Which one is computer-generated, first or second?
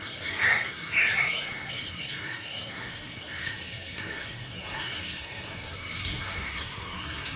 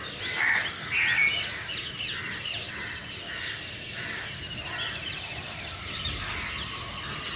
first